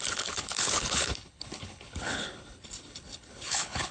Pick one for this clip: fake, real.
fake